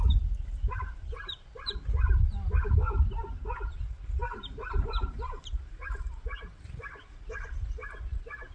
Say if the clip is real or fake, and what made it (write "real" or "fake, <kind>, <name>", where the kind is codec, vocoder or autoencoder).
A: real